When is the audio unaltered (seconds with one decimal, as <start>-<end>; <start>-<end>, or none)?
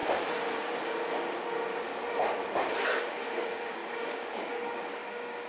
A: 0.0-3.0